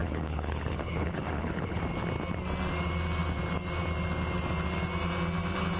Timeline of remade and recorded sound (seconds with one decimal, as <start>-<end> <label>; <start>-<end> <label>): 0.0-1.8 remade; 1.8-5.8 recorded